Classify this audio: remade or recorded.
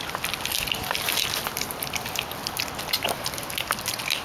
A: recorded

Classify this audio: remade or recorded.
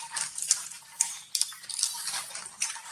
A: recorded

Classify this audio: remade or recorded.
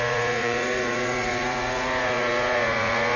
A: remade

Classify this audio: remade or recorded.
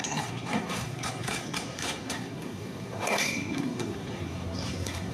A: remade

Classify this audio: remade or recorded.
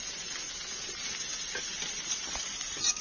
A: recorded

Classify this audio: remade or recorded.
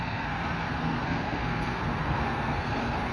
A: remade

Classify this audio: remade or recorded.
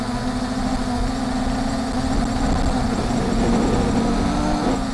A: recorded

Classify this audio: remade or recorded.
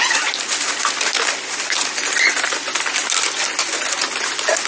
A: recorded